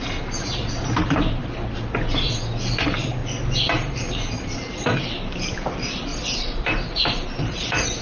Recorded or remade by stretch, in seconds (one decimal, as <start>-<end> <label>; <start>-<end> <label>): 0.0-1.4 remade; 1.4-2.6 recorded; 2.6-6.1 remade; 6.1-8.0 recorded